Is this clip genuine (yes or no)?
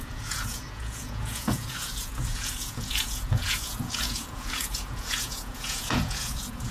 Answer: no